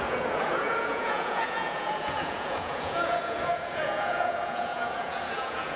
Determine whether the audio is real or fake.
fake